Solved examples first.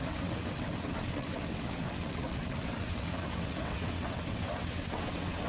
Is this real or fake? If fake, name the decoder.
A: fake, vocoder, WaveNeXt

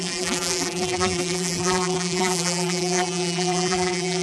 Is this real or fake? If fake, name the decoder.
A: fake, vocoder, BigVGAN v2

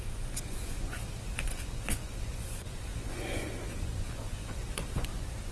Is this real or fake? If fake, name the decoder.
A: fake, vocoder, Vocos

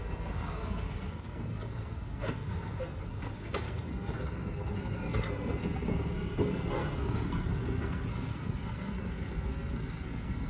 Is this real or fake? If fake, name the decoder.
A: fake, codec, SNAC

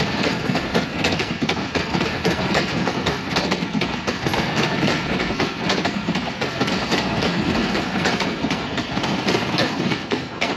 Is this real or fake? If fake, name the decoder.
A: fake, codec, SNAC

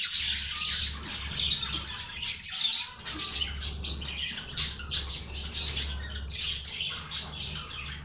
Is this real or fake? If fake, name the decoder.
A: real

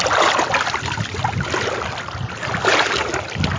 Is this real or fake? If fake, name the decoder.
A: real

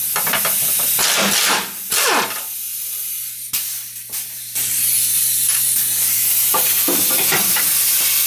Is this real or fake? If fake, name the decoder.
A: real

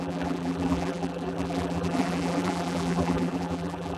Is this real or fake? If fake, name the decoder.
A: fake, vocoder, BigVGAN v2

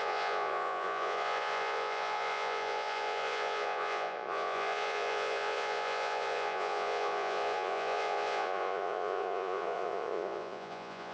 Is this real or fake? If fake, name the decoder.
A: fake, vocoder, Vocos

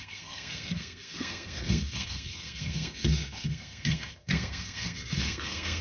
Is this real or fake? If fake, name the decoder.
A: fake, codec, SNAC